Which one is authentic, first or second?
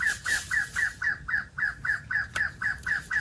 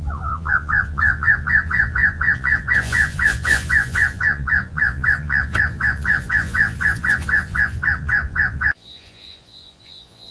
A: first